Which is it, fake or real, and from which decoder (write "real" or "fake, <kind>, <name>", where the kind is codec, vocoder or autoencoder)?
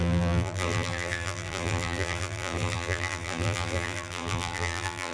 fake, vocoder, BigVGAN v2